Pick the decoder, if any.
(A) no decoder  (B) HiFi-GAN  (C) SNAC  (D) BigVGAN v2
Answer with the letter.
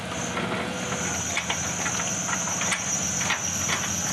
A